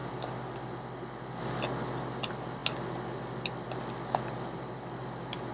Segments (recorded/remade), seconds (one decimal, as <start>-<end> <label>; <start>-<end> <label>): 0.0-5.5 recorded